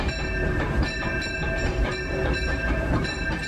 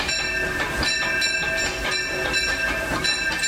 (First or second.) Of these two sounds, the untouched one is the second